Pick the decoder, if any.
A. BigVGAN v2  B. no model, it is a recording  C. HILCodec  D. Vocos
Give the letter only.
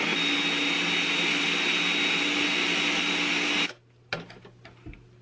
B